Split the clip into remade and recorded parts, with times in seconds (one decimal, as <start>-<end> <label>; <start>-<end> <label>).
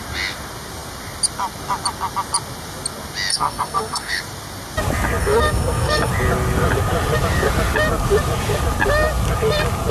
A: 0.0-3.3 recorded; 3.3-4.2 remade; 4.2-5.2 recorded; 5.2-6.1 remade; 6.1-9.9 recorded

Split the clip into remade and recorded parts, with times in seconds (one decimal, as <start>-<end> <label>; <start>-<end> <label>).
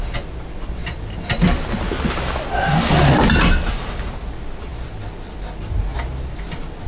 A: 0.0-6.9 recorded